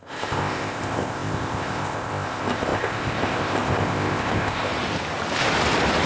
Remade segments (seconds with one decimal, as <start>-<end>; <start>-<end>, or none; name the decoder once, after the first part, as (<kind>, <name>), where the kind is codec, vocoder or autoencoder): 0.0-4.7 (codec, ZipCodec)